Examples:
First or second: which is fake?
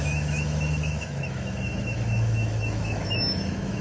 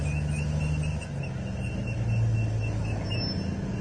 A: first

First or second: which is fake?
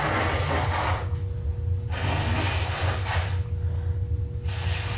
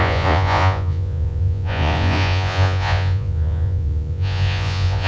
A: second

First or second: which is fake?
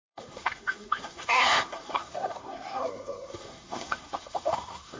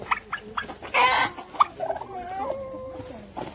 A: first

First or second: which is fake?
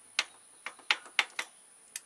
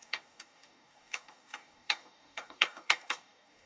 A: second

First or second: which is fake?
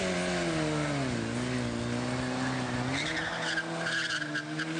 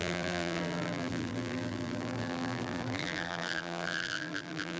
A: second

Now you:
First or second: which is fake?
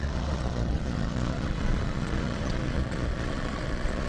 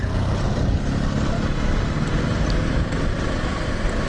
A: first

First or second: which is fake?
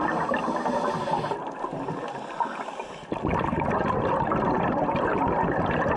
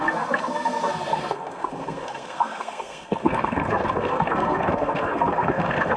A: second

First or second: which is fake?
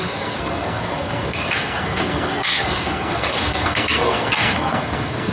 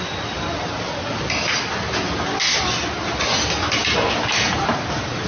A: first